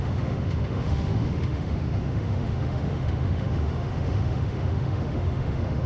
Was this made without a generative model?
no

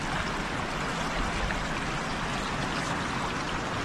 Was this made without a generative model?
yes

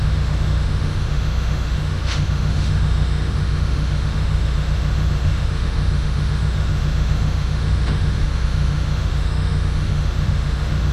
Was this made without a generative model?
no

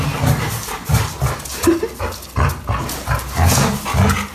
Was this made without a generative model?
yes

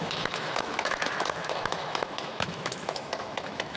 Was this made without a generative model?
no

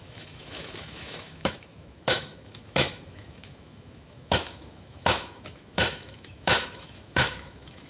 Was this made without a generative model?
no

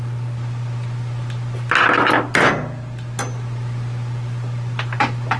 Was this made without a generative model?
yes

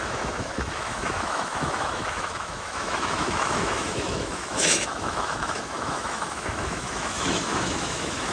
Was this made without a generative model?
no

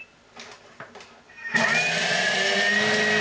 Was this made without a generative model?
yes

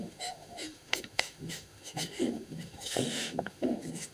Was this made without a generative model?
no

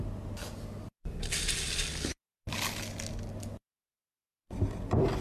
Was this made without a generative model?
yes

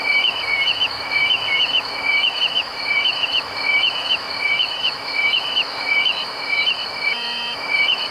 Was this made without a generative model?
no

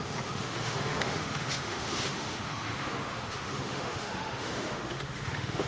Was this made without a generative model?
no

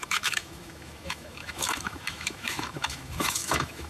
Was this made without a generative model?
no